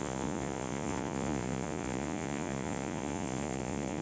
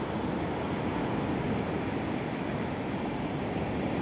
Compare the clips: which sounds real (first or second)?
second